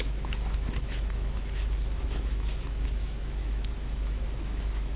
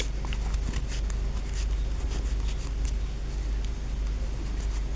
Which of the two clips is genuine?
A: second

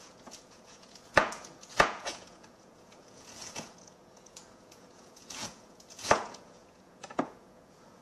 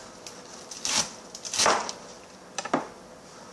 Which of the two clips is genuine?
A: second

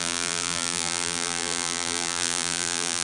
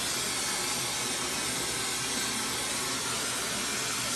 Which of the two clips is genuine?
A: second